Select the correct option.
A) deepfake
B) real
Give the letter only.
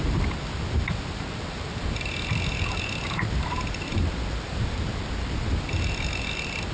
B